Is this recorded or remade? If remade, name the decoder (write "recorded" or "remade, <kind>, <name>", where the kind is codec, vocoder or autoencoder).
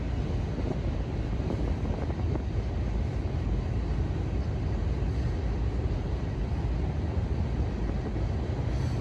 recorded